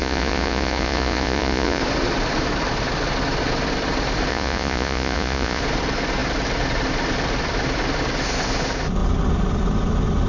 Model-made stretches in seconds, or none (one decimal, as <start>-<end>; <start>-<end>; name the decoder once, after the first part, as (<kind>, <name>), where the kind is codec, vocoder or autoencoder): 0.0-1.8 (vocoder, Vocos); 4.3-5.6